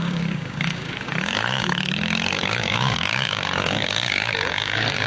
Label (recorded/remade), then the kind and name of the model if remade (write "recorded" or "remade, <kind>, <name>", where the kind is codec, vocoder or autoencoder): remade, codec, DAC